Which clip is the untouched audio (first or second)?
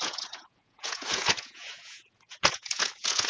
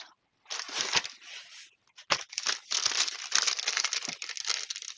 second